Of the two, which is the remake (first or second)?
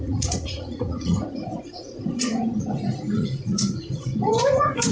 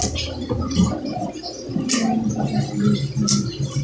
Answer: first